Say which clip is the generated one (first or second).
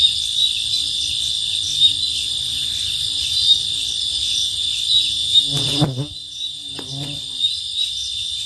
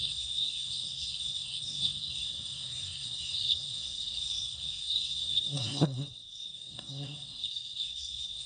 second